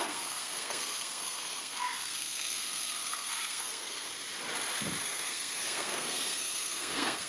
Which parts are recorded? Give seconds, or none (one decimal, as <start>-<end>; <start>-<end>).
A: 4.1-5.0